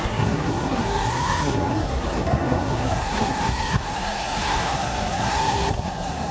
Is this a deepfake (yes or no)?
yes